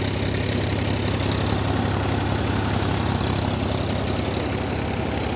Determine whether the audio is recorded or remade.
recorded